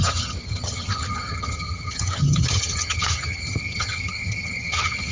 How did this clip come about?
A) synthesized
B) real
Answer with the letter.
A